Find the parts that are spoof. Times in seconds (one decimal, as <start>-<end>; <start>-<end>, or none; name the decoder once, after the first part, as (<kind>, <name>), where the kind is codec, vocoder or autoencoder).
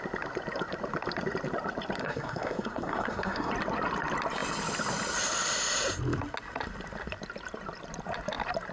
2.0-3.5 (codec, SNAC)